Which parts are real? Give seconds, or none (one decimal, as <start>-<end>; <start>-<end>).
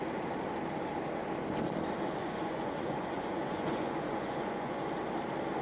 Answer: 0.0-2.2; 4.9-5.6